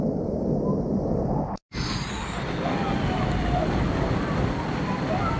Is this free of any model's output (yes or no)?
yes